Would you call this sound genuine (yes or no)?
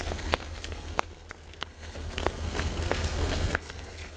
no